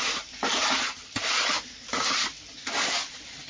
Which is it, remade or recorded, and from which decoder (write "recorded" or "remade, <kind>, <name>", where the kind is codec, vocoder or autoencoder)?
recorded